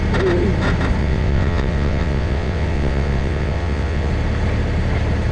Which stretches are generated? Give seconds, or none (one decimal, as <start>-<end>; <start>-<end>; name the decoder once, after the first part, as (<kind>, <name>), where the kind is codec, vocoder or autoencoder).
1.0-4.1 (vocoder, WaveNeXt)